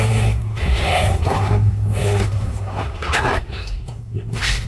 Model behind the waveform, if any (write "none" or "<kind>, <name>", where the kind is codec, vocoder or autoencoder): codec, SNAC